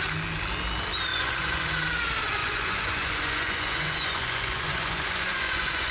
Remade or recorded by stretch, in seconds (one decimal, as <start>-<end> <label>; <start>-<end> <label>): 0.0-1.1 recorded; 1.1-1.7 remade; 1.7-2.4 recorded; 2.4-5.9 remade